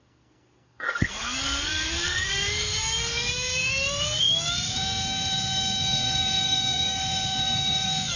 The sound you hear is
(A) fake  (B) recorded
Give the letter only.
A